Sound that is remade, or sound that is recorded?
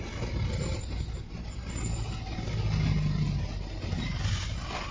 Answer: recorded